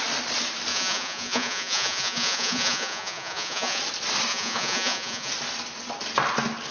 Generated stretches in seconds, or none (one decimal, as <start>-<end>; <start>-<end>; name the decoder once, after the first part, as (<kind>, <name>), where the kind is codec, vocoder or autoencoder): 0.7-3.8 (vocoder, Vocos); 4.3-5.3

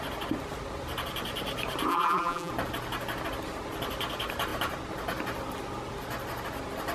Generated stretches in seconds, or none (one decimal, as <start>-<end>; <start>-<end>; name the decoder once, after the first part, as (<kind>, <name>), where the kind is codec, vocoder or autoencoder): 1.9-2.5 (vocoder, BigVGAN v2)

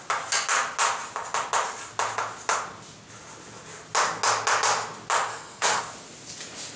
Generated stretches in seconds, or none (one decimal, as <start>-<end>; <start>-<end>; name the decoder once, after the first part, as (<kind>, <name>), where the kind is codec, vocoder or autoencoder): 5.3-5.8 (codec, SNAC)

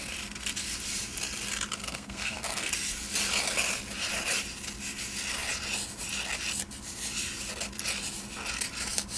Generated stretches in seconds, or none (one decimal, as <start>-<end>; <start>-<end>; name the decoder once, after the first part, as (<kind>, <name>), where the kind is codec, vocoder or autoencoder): 1.8-2.7 (codec, SNAC)

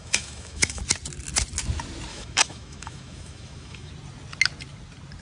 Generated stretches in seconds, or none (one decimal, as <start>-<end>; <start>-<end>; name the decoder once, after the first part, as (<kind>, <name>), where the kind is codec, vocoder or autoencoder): 0.0-0.8 (autoencoder, DAC-VAE); 2.1-3.9

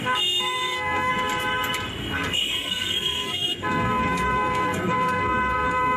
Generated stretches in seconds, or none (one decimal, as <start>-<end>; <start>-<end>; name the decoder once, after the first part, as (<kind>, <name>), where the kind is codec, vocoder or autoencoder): 0.0-1.1 (codec, SNAC); 2.0-6.0

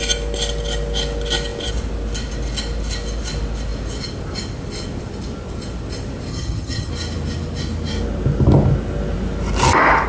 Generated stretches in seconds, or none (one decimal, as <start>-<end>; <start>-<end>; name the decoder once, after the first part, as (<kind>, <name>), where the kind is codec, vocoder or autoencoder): 6.3-6.9 (vocoder, HiFi-GAN)